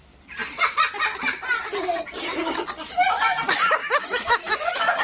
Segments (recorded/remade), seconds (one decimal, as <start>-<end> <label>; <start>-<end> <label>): 0.0-3.8 recorded; 3.8-5.0 remade